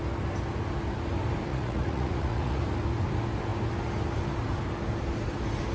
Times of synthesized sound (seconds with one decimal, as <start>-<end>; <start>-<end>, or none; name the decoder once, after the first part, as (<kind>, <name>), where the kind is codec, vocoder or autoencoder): 1.5-2.6 (vocoder, Vocos)